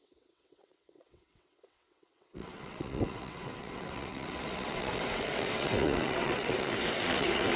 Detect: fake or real fake